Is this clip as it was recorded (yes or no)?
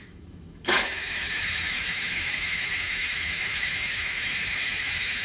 no